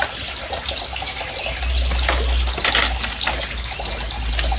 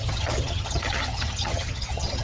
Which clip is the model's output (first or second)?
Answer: second